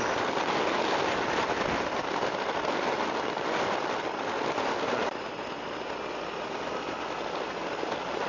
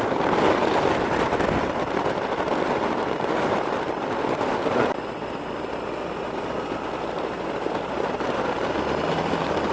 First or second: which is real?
first